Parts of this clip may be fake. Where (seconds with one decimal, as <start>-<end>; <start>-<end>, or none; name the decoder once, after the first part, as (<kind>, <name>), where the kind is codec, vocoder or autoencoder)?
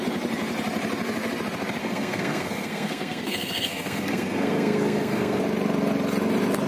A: 1.8-5.4 (codec, SNAC)